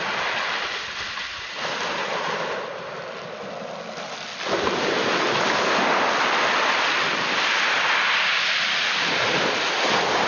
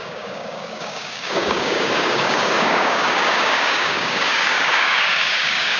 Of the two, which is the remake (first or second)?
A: second